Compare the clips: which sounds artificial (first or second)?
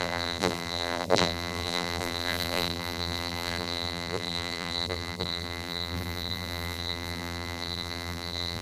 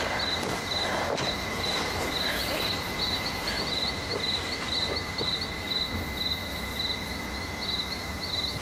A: first